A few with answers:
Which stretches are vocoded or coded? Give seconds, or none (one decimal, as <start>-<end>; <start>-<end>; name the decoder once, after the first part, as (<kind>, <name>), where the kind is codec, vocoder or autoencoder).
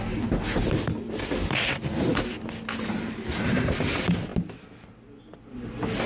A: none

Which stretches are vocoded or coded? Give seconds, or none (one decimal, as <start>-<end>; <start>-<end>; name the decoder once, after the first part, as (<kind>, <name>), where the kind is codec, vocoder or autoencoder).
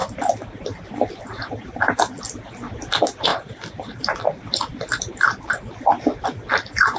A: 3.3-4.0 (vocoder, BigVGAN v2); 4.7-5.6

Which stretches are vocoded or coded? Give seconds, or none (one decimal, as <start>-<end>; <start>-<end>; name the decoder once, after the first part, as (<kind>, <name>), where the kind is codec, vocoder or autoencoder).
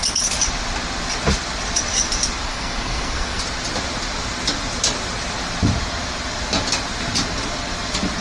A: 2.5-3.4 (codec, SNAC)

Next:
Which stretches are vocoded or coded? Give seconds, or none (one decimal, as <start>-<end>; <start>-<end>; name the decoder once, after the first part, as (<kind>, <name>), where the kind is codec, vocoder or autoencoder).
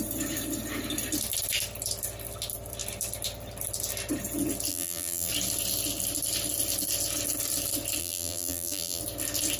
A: 4.7-5.3 (vocoder, BigVGAN v2); 8.0-9.0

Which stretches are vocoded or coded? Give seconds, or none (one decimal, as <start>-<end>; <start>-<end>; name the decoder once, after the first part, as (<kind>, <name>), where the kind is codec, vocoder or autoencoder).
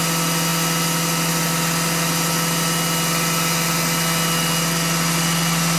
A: none